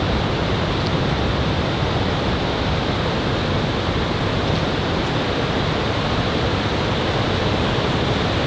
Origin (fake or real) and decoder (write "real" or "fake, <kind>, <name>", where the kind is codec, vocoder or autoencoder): real